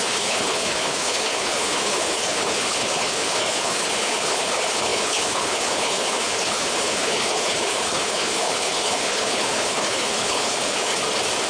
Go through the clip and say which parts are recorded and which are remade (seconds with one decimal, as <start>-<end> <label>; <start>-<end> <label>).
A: 0.0-10.9 remade; 10.9-11.5 recorded